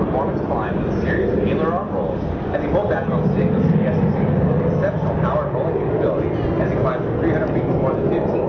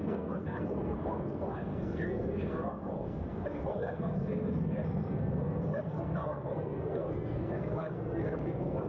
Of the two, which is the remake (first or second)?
second